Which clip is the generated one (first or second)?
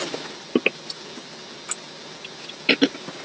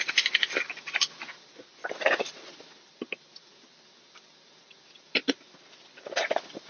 second